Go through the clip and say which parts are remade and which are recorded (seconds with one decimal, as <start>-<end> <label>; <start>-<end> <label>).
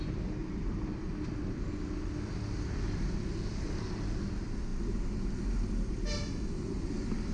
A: 0.0-0.4 recorded; 0.4-1.1 remade; 1.1-7.3 recorded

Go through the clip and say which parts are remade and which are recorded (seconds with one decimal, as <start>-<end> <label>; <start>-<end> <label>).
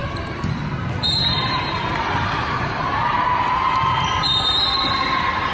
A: 0.0-5.5 remade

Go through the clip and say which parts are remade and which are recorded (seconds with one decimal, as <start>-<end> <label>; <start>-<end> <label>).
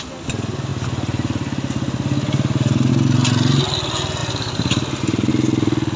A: 0.0-4.2 recorded; 4.2-5.3 remade; 5.3-6.0 recorded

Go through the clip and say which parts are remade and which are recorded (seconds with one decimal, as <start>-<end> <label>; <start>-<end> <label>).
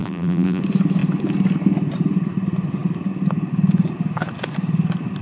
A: 0.0-0.6 remade; 0.6-5.2 recorded